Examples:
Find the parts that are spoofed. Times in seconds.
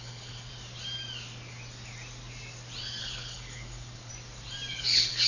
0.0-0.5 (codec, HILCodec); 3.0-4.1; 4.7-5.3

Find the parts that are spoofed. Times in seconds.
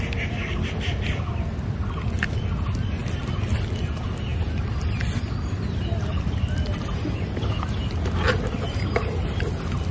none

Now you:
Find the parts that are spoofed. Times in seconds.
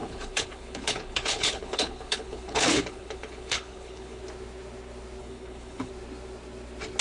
0.0-4.2 (codec, HILCodec); 5.2-5.9